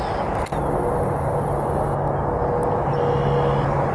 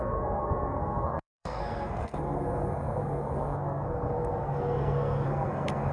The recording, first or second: first